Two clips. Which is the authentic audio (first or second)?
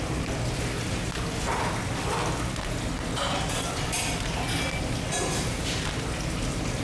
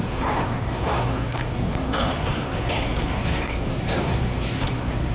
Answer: first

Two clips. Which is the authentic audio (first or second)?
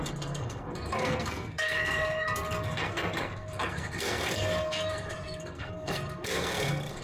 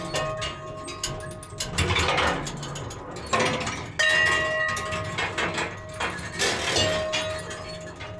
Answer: second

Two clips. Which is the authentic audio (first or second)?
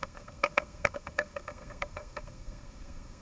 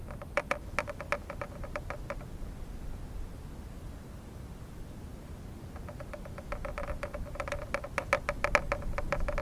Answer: second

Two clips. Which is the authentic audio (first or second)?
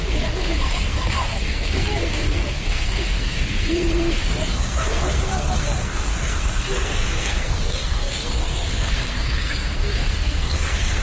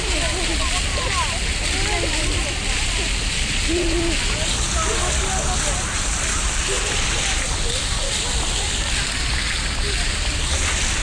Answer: second